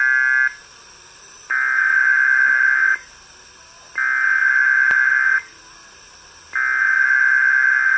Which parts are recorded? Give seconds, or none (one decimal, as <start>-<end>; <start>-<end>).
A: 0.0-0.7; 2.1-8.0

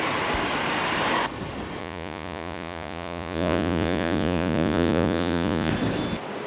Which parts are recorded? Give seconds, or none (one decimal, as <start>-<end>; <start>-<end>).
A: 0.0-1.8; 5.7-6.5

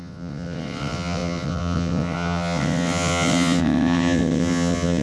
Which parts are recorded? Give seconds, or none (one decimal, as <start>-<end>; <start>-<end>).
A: none

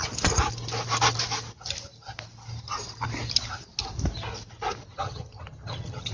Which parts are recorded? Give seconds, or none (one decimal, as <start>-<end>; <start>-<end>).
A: 0.0-5.0

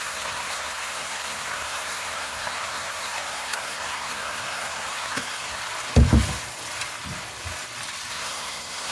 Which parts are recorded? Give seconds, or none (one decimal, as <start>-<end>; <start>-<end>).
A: 5.6-8.1